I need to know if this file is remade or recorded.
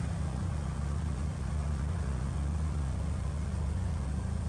remade